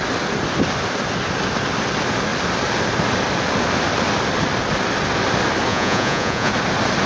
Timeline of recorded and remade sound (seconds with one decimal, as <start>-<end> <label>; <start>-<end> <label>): 0.0-5.7 recorded; 5.7-6.5 remade; 6.5-7.1 recorded